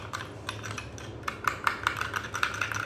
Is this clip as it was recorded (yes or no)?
yes